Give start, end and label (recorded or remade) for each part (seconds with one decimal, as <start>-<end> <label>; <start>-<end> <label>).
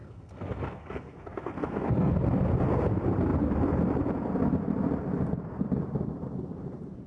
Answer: 0.0-2.1 remade; 2.1-7.1 recorded